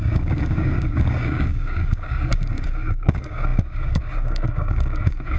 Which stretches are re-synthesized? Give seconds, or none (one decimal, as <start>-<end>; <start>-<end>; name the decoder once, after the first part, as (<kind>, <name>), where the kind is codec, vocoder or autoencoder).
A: 0.0-5.4 (codec, DAC)